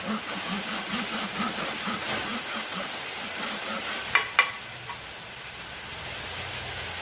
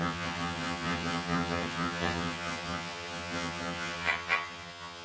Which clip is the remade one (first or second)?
second